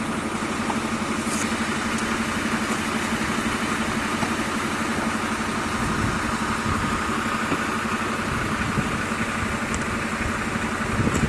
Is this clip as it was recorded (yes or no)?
yes